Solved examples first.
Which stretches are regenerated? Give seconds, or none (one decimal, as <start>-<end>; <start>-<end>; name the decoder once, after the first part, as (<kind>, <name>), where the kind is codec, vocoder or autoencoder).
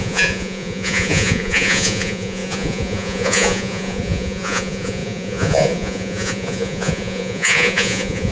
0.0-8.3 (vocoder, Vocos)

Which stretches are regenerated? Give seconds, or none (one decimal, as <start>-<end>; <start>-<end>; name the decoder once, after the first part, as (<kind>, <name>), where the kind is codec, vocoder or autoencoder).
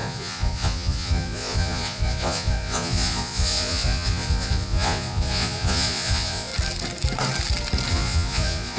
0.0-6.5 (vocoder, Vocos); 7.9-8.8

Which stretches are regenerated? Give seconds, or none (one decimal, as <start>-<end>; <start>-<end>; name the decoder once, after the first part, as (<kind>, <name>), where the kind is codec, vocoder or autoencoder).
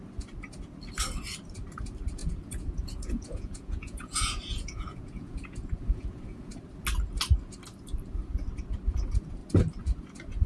2.2-6.5 (vocoder, Vocos)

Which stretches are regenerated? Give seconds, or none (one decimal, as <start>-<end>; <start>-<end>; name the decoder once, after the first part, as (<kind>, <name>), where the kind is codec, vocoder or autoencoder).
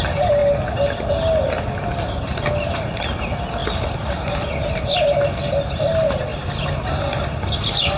none